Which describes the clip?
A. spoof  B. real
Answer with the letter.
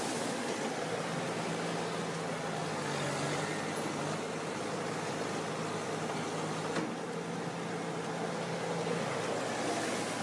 B